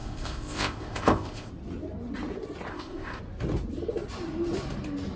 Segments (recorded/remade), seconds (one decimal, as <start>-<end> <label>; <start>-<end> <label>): 0.0-1.5 remade; 1.5-2.7 recorded; 2.7-3.2 remade; 3.2-5.2 recorded

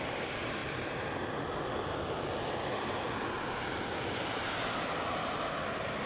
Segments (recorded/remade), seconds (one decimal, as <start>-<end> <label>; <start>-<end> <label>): 0.0-6.1 recorded

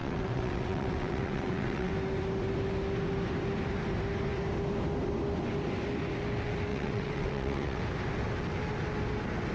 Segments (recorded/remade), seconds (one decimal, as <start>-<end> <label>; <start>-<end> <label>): 0.0-1.9 remade; 1.9-6.7 recorded; 6.7-7.8 remade; 7.8-9.5 recorded

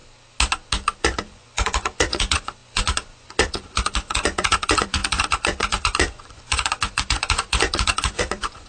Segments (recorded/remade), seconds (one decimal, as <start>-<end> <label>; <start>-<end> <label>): 0.0-1.0 recorded; 1.0-8.7 remade

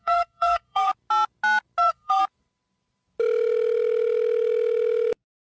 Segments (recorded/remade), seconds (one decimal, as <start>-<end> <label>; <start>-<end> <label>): 0.0-0.9 remade; 0.9-1.8 recorded; 1.8-2.2 remade; 2.2-5.5 recorded